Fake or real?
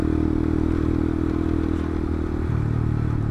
real